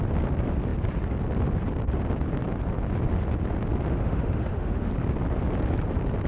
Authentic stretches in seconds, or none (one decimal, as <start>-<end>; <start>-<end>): 0.0-3.9; 4.9-6.3